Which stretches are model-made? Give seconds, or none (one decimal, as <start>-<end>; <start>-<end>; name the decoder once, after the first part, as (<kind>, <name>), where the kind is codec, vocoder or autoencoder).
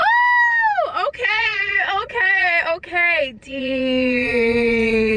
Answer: 1.1-5.2 (vocoder, Vocos)